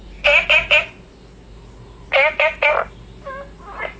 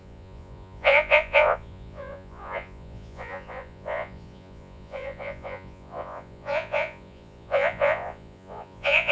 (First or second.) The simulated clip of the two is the second